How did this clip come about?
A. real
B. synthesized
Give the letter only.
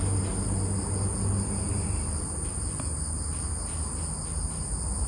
A